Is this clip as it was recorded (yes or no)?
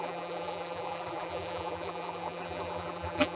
no